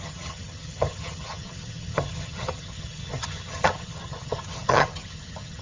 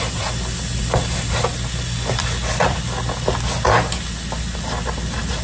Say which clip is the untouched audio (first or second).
second